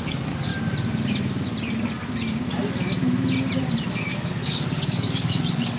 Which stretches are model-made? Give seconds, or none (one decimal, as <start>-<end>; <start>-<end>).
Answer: 0.0-0.5; 3.9-5.8